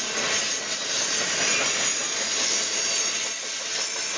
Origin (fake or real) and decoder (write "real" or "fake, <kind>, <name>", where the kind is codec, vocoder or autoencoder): real